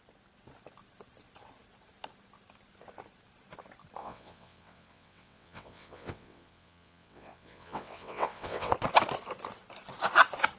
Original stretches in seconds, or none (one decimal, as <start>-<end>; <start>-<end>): 0.0-4.0; 8.7-10.6

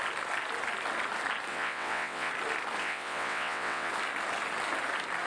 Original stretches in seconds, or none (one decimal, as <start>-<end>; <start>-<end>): 0.0-1.5; 2.3-2.8; 3.9-5.3

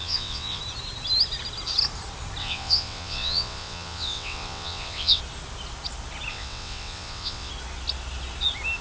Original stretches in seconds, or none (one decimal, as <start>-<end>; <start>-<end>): 0.6-2.4; 5.2-6.3; 7.5-8.8

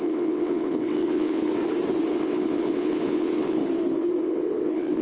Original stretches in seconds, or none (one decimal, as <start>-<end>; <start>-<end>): 1.6-2.1; 3.6-4.2

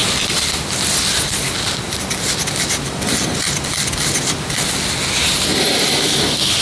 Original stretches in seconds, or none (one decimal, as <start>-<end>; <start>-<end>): 0.0-6.6

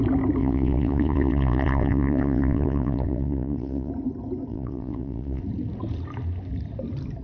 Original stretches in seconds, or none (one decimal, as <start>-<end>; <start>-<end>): 0.0-0.4; 3.9-4.5; 5.4-7.2